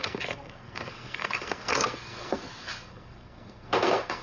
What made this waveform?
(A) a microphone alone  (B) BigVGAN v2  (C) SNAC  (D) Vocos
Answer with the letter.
C